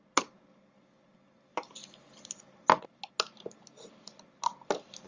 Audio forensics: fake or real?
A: real